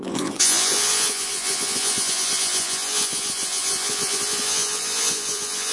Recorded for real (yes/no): no